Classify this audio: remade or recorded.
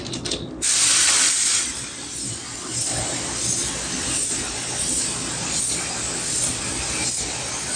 recorded